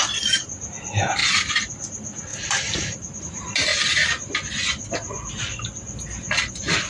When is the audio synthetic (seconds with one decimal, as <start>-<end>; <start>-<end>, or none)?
none